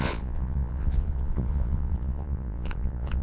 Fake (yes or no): yes